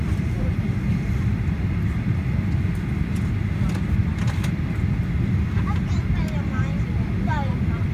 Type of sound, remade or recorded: recorded